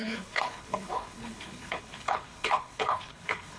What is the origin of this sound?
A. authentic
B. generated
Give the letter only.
B